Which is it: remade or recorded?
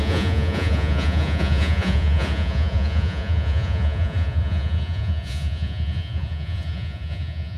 remade